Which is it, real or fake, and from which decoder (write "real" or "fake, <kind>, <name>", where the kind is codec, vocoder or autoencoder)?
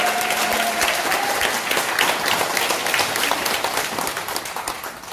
real